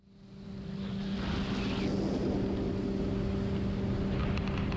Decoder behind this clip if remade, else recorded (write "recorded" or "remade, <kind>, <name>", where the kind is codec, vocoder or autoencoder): recorded